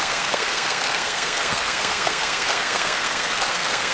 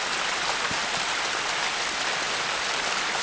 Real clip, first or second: second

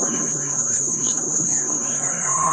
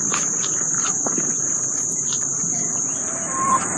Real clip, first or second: second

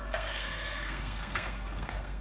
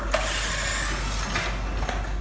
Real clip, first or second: second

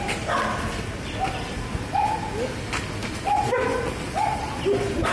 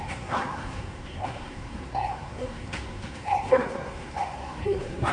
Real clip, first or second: first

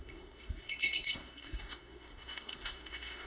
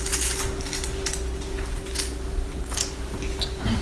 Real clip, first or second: second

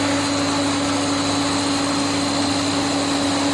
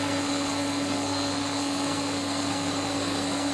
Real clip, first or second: first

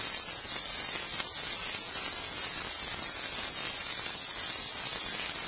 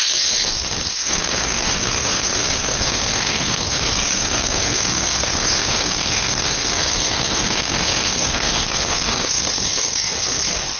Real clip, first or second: first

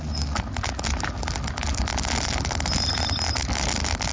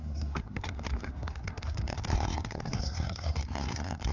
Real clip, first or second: first